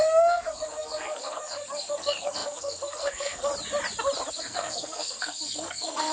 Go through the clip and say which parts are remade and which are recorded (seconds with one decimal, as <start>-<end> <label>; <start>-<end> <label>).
0.0-3.5 remade; 3.5-4.3 recorded; 4.3-6.1 remade

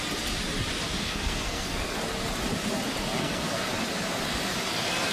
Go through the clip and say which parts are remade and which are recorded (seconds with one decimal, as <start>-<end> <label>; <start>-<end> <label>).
0.0-1.0 recorded; 1.0-2.0 remade; 2.0-3.2 recorded; 3.2-3.7 remade; 3.7-5.1 recorded

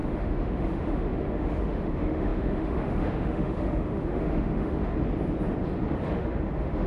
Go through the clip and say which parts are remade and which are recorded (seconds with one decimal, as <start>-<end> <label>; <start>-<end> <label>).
0.0-4.8 remade; 4.8-6.1 recorded; 6.1-6.9 remade

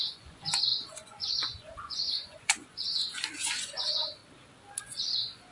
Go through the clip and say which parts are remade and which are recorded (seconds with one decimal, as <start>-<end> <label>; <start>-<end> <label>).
0.0-4.2 remade; 4.2-4.8 recorded; 4.8-5.5 remade

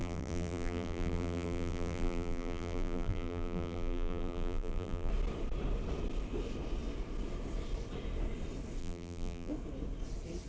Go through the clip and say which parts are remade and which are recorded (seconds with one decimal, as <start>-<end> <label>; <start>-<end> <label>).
0.0-5.1 remade; 5.1-8.8 recorded; 8.8-9.5 remade; 9.5-10.5 recorded

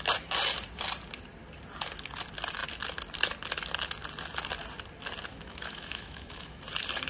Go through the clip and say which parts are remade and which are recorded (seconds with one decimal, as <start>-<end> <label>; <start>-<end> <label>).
0.0-5.3 recorded; 5.3-6.6 remade; 6.6-7.1 recorded

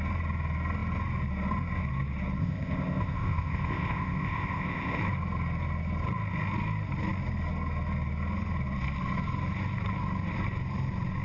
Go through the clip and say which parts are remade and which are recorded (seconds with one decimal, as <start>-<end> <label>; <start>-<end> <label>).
0.0-2.4 recorded; 2.4-5.0 remade; 5.0-11.2 recorded

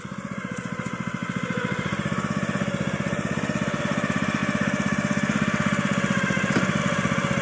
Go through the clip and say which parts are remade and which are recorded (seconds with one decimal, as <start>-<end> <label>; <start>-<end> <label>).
0.0-1.2 remade; 1.2-3.8 recorded; 3.8-4.4 remade; 4.4-6.8 recorded; 6.8-7.4 remade